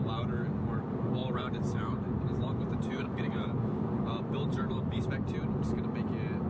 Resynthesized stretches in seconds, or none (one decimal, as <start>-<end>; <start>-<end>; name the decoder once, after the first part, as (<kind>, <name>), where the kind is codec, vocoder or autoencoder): 1.2-5.1 (vocoder, BigVGAN v2)